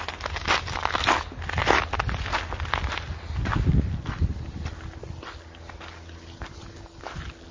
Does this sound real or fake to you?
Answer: real